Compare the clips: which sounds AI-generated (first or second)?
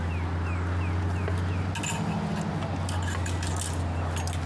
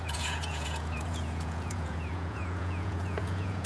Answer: second